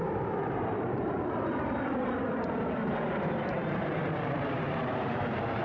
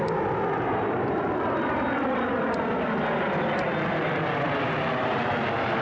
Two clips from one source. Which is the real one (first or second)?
second